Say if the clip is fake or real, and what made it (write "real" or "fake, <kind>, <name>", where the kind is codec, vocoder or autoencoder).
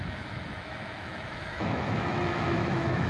fake, autoencoder, DAC-VAE